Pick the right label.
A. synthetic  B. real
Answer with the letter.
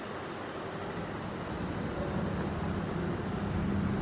B